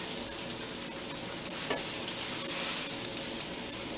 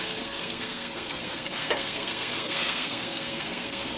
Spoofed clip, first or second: second